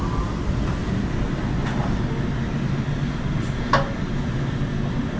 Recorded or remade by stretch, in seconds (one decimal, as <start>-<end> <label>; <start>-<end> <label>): 0.0-5.2 recorded